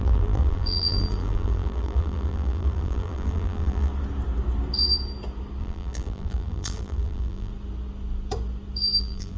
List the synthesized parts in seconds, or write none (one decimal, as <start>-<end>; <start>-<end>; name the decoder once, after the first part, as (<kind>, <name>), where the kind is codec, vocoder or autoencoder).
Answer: 0.0-3.9 (vocoder, BigVGAN v2); 5.6-7.5; 9.0-9.4